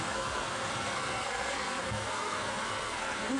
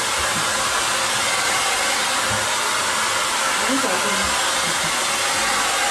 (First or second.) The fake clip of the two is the first